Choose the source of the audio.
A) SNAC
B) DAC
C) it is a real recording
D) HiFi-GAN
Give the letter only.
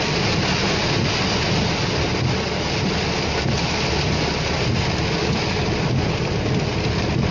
C